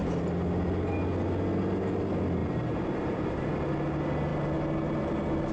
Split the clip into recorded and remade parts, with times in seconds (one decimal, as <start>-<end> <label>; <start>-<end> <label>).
0.0-2.4 recorded; 2.4-3.5 remade; 3.5-5.5 recorded